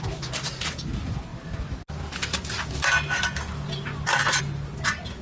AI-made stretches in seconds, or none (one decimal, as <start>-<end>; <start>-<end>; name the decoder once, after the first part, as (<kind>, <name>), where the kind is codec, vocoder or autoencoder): none

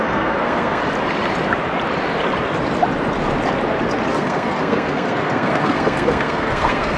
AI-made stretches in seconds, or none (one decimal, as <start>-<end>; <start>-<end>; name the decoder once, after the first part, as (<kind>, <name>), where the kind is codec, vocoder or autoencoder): 0.0-0.8 (codec, SNAC); 4.1-7.0

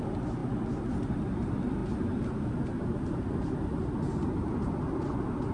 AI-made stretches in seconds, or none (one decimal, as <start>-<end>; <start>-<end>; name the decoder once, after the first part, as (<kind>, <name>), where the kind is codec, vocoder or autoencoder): none

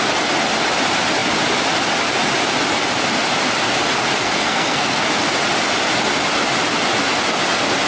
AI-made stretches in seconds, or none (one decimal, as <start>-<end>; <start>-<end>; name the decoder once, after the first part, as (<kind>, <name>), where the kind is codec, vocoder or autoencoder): 4.2-5.1 (codec, SNAC)

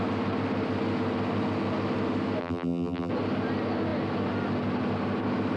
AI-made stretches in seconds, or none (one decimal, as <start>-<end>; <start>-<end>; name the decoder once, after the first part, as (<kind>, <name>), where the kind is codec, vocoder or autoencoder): 2.4-3.1 (vocoder, BigVGAN v2)

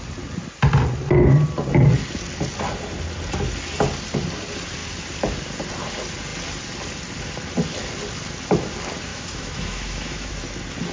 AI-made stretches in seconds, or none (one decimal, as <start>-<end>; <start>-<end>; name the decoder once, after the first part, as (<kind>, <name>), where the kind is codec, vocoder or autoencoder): 9.1-10.3 (autoencoder, DAC-VAE)

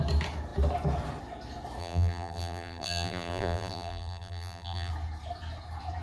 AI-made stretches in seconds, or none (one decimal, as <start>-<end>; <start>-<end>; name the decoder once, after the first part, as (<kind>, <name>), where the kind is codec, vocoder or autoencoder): 1.8-4.9 (vocoder, BigVGAN v2)